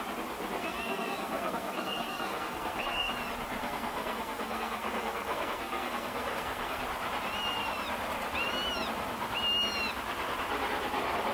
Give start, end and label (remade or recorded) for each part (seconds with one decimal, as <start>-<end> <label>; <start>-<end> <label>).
0.0-0.6 recorded; 0.6-3.1 remade; 3.1-3.6 recorded; 3.6-6.8 remade; 6.8-11.3 recorded